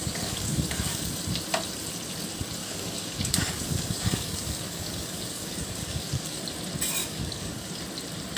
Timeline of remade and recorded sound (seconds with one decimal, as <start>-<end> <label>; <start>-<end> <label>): 0.0-1.1 remade; 1.1-2.6 recorded; 2.6-6.4 remade; 6.4-7.0 recorded; 7.0-7.7 remade; 7.7-8.4 recorded